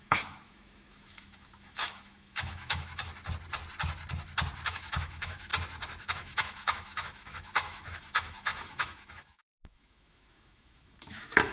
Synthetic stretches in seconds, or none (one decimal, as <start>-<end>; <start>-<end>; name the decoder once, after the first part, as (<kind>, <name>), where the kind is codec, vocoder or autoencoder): 0.0-3.1 (autoencoder, DAC-VAE); 4.7-5.5; 6.0-11.5